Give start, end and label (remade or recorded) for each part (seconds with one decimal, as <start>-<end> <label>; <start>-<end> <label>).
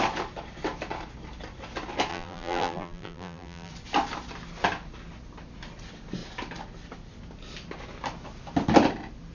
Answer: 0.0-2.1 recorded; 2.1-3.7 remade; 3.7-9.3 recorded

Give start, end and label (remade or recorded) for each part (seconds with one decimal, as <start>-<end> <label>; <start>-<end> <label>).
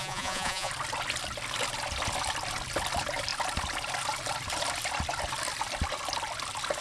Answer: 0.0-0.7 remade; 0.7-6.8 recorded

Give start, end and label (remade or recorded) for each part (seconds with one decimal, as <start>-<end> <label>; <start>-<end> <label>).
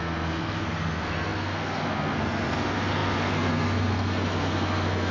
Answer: 0.0-5.1 remade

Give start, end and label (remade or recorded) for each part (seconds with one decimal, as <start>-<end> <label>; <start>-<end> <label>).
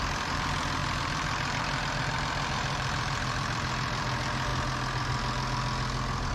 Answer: 0.0-4.5 remade; 4.5-6.3 recorded